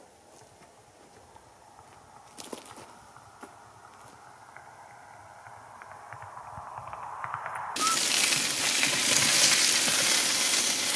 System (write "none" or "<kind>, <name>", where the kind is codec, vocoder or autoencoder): none